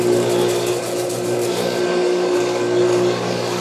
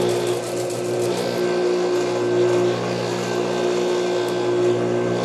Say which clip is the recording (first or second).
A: second